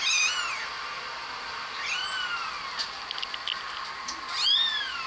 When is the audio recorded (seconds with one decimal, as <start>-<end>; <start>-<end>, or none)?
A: 0.0-5.1